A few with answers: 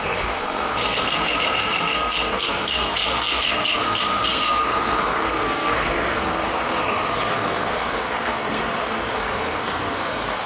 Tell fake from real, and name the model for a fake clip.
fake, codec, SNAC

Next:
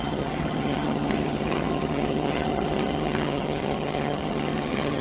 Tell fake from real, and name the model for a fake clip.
fake, vocoder, HiFi-GAN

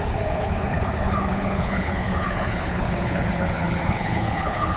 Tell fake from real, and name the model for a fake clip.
fake, codec, HILCodec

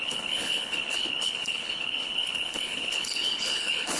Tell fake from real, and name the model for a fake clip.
fake, codec, HILCodec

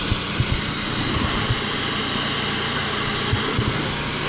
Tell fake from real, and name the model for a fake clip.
real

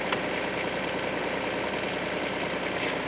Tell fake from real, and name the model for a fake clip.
real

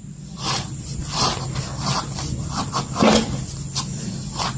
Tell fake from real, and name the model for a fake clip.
real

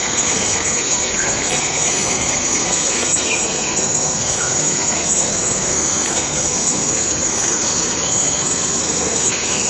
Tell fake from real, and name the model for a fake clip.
fake, codec, SNAC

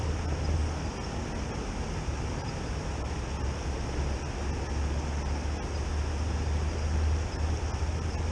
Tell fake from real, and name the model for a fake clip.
real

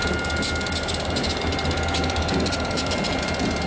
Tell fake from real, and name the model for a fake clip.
real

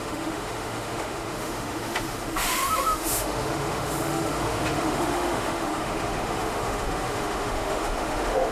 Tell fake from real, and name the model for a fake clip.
fake, autoencoder, DAC-VAE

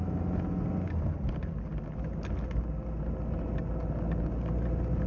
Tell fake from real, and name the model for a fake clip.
real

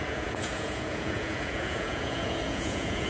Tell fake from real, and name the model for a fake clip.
fake, vocoder, Vocos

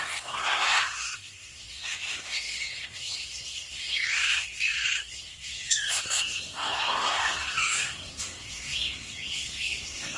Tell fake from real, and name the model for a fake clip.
fake, codec, SNAC